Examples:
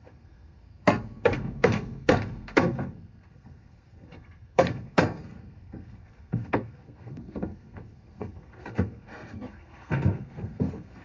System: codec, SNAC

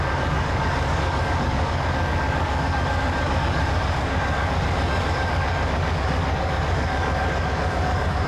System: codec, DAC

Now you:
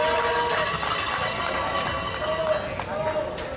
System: none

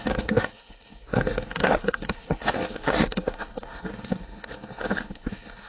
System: codec, SNAC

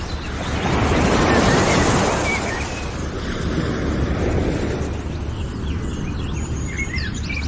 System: none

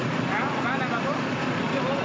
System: none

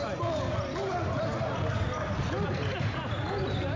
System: none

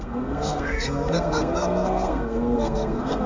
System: codec, SNAC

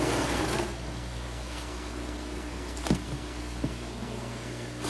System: codec, SNAC